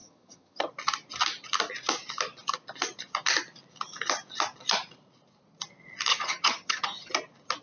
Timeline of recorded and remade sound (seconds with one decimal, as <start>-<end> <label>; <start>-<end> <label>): 0.0-0.7 remade; 0.7-6.1 recorded; 6.1-7.1 remade; 7.1-7.6 recorded